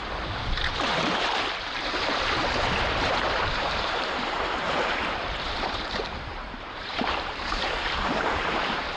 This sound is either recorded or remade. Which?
remade